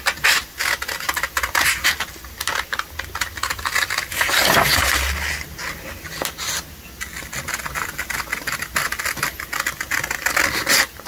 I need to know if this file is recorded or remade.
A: recorded